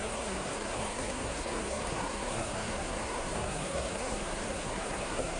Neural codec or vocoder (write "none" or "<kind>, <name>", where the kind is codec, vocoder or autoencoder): codec, SNAC